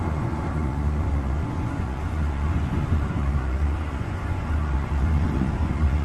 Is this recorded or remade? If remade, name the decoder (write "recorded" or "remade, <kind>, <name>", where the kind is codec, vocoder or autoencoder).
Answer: remade, vocoder, Vocos